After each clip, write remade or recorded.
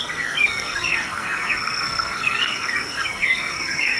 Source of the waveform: remade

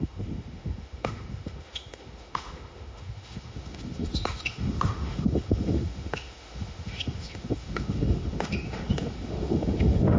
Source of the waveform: remade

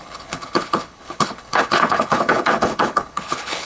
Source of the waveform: remade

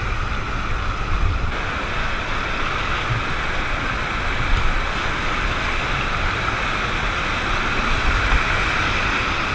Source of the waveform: recorded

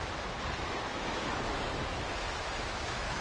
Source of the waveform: remade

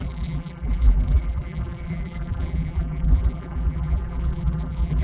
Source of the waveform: remade